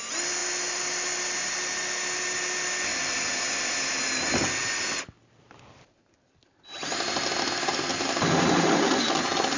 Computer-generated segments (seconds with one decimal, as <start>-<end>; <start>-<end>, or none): 2.9-3.7